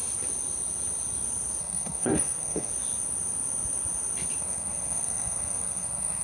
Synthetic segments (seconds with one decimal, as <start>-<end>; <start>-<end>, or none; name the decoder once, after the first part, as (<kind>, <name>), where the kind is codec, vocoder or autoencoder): 1.6-2.7 (codec, SNAC); 4.4-6.2